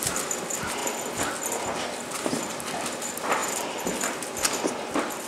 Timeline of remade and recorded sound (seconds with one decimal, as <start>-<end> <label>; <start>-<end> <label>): 0.0-5.3 recorded